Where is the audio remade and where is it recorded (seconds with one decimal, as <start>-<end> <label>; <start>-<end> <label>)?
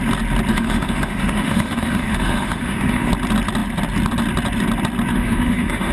0.0-0.5 recorded; 0.5-3.1 remade; 3.1-5.1 recorded; 5.1-5.9 remade